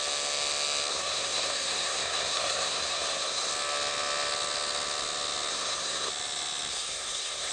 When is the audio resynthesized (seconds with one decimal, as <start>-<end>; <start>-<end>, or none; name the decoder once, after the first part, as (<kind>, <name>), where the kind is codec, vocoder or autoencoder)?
0.9-3.5 (codec, SNAC); 5.5-6.1; 6.7-7.5